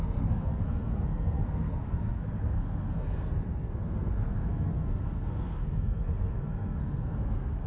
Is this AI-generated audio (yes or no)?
yes